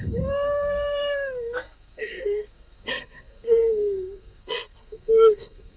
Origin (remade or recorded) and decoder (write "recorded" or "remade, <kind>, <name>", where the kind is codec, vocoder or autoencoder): remade, codec, SNAC